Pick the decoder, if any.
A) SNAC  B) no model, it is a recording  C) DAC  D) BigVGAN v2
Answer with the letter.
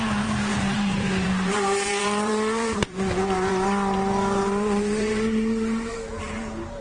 D